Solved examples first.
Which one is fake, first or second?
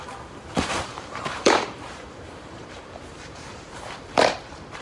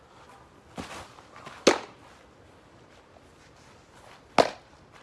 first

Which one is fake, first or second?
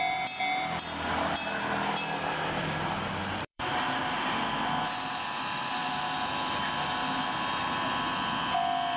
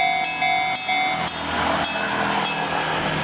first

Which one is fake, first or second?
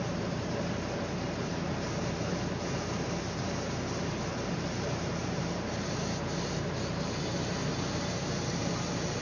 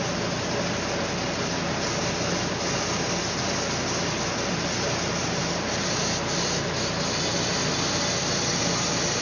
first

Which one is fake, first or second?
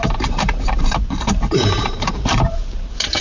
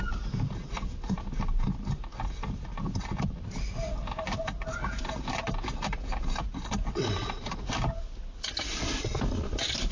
first